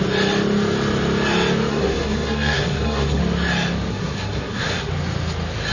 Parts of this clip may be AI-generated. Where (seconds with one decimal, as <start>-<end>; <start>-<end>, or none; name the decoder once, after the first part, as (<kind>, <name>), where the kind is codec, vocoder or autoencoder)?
1.7-3.2 (codec, SNAC); 3.9-4.9